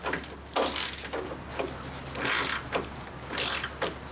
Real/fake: real